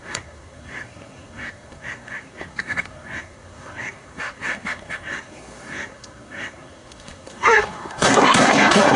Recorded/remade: remade